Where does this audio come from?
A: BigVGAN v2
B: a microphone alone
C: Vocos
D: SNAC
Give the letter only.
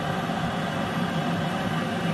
B